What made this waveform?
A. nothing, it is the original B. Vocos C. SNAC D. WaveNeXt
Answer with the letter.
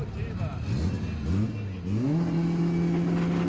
A